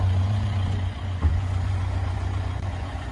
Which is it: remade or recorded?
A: remade